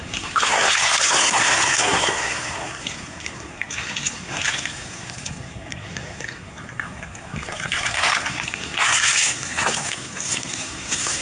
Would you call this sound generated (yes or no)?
yes